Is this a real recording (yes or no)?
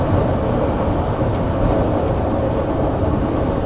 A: yes